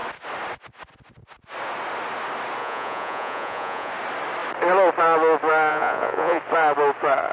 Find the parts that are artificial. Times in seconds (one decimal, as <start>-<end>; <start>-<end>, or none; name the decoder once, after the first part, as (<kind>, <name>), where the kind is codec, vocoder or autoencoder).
2.6-3.9 (vocoder, Vocos); 5.7-6.4